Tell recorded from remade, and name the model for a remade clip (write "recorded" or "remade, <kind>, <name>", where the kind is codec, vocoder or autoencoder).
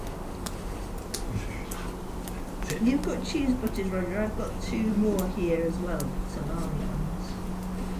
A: recorded